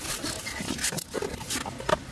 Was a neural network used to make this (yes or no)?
no